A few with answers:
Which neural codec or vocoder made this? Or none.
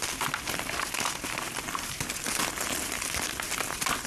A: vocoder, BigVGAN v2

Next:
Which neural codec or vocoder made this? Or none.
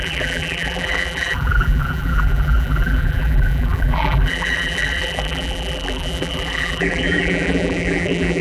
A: vocoder, BigVGAN v2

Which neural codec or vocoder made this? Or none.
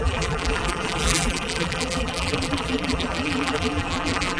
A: vocoder, BigVGAN v2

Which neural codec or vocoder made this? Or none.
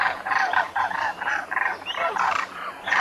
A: vocoder, BigVGAN v2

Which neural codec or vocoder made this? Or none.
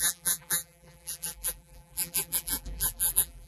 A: vocoder, BigVGAN v2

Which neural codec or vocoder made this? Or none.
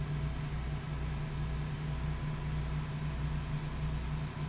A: none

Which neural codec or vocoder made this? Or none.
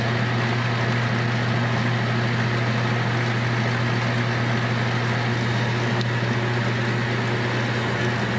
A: none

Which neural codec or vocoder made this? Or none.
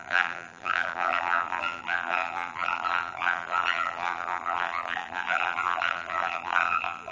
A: vocoder, BigVGAN v2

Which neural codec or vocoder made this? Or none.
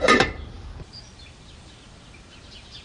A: vocoder, BigVGAN v2